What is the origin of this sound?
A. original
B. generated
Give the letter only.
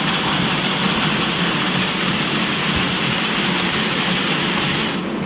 A